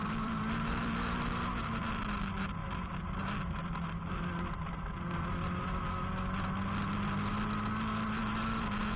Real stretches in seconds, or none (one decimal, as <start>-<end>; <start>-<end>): 0.9-9.0